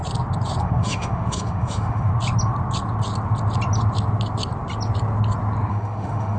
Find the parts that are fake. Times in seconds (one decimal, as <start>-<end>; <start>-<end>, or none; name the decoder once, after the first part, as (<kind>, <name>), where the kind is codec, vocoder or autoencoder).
0.6-2.1 (autoencoder, DAC-VAE); 5.7-6.4